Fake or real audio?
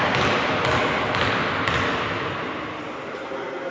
real